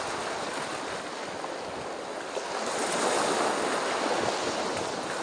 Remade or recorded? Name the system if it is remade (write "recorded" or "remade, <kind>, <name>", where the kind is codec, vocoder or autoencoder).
recorded